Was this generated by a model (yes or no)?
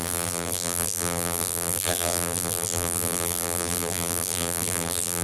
yes